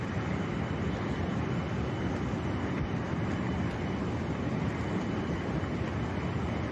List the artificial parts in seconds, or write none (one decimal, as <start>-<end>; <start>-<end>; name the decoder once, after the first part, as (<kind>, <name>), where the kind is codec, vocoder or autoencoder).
none